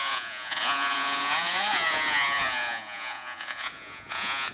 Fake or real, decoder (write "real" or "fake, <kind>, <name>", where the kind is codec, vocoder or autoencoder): fake, vocoder, Vocos